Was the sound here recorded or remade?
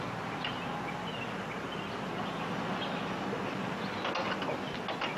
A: recorded